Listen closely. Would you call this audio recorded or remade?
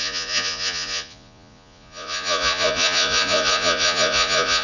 remade